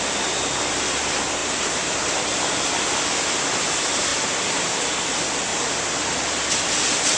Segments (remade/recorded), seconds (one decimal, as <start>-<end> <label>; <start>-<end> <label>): 0.0-1.4 recorded; 1.4-2.0 remade; 2.0-4.1 recorded; 4.1-4.8 remade; 4.8-7.2 recorded